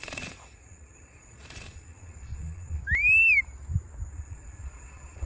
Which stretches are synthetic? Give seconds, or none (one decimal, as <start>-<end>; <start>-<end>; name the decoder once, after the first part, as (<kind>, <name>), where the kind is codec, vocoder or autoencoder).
0.0-2.8 (vocoder, Vocos); 4.1-5.3

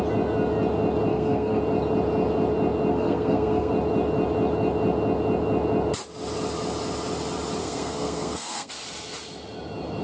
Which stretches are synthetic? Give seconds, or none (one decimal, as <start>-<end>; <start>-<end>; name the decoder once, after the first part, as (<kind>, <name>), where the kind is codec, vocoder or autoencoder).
1.1-1.6 (codec, SNAC); 2.9-3.7; 7.6-8.7